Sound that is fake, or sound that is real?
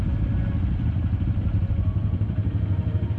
fake